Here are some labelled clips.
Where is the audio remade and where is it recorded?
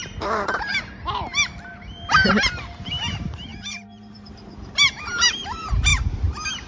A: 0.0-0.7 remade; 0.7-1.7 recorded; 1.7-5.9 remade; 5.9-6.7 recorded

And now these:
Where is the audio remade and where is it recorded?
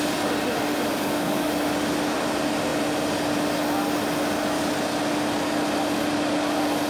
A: 0.0-0.7 recorded; 0.7-1.5 remade; 1.5-6.9 recorded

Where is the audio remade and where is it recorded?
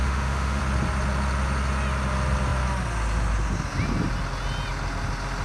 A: 0.0-0.6 remade; 0.6-5.4 recorded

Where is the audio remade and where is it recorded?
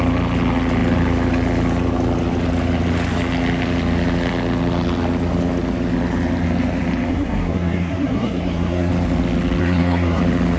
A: 0.0-7.1 recorded; 7.1-8.9 remade; 8.9-9.6 recorded; 9.6-10.2 remade; 10.2-10.6 recorded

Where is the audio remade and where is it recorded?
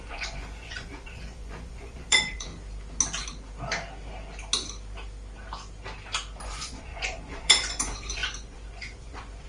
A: 0.0-2.5 remade; 2.5-6.4 recorded; 6.4-9.5 remade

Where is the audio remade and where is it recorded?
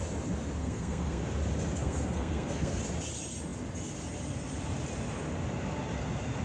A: 0.0-0.6 recorded; 0.6-1.2 remade; 1.2-1.8 recorded; 1.8-2.8 remade; 2.8-6.4 recorded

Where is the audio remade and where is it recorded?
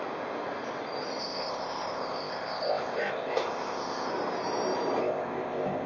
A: 0.0-1.2 recorded; 1.2-4.1 remade; 4.1-5.0 recorded; 5.0-5.9 remade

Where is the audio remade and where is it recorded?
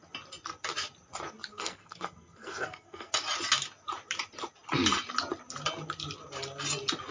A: 0.0-1.5 recorded; 1.5-3.1 remade; 3.1-7.1 recorded